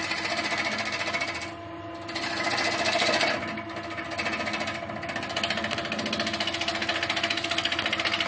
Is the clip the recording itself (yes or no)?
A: yes